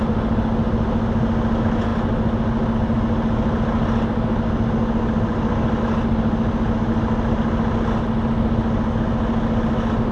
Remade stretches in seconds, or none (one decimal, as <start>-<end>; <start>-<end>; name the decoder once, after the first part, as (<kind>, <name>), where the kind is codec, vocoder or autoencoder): none